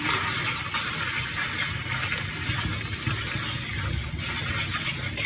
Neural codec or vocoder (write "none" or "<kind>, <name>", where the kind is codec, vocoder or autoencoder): none